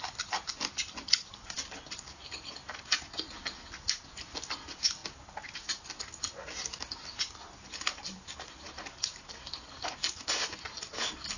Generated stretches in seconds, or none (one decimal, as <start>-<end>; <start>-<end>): none